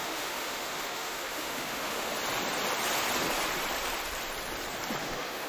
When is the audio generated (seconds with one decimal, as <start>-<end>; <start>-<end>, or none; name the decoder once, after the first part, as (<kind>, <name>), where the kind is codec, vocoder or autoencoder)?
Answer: 0.0-2.1 (autoencoder, DAC-VAE); 5.0-5.5